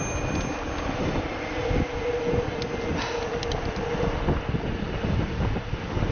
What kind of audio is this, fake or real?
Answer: real